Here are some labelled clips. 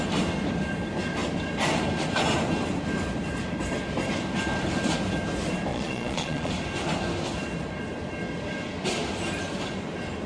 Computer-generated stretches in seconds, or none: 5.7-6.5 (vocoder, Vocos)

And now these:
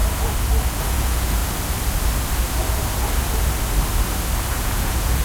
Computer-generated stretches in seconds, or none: 0.8-1.4 (vocoder, Vocos); 4.5-5.2

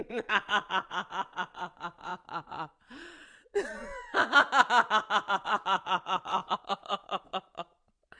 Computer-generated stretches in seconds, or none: 0.0-3.9 (vocoder, Vocos); 5.3-8.2

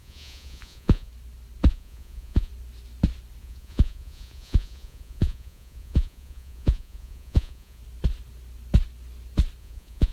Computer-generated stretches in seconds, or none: 0.0-1.1 (vocoder, Vocos); 1.7-2.5; 3.4-7.8; 9.6-10.1

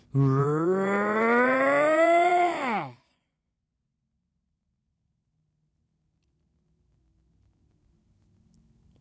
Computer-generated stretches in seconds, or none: 0.4-4.0 (vocoder, Vocos)